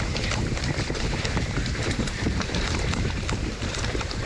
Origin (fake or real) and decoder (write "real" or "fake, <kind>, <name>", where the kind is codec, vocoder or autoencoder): fake, vocoder, BigVGAN v2